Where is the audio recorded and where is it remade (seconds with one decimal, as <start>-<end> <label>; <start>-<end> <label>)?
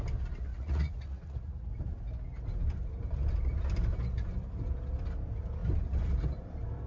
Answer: 0.0-0.5 recorded; 0.5-1.7 remade; 1.7-6.9 recorded